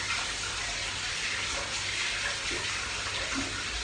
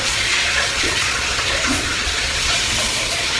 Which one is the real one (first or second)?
first